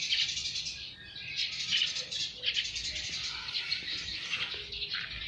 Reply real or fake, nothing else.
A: real